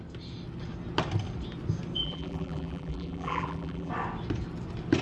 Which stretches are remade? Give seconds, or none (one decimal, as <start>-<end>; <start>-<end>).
2.0-3.9